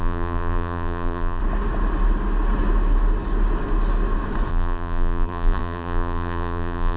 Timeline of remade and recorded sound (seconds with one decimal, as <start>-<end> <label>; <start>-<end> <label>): 0.0-1.4 remade; 1.4-4.5 recorded; 4.5-7.0 remade